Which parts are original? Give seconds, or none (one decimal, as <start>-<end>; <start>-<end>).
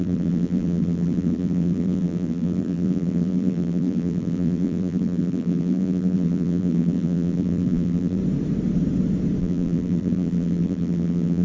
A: 8.2-9.4